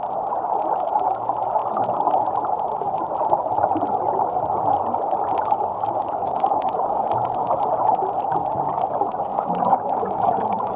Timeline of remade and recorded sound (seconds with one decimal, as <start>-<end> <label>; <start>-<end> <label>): 0.0-5.7 recorded; 5.7-7.0 remade; 7.0-9.3 recorded; 9.3-10.8 remade